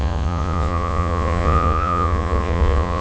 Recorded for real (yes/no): no